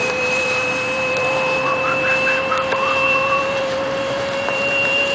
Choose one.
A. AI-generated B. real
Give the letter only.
A